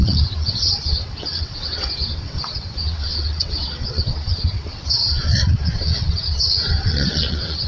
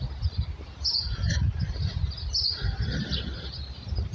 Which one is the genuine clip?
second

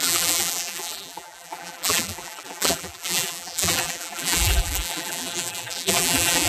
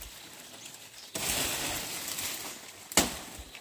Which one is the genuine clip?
second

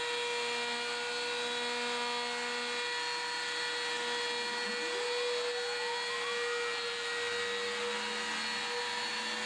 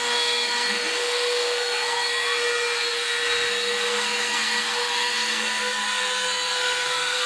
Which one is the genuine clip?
first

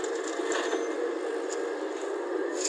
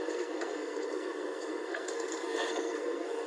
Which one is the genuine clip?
first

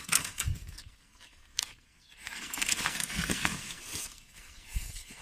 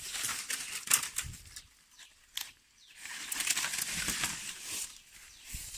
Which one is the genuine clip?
second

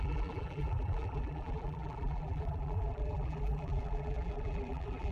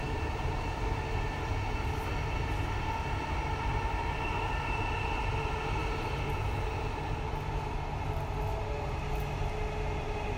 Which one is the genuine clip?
second